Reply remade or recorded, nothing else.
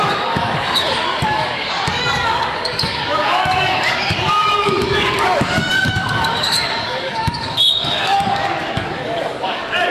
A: remade